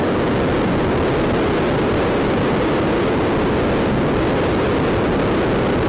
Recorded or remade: recorded